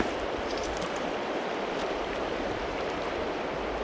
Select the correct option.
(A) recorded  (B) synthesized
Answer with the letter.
B